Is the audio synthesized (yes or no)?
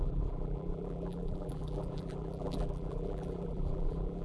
yes